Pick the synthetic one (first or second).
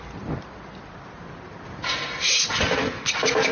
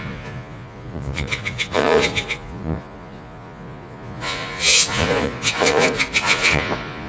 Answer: second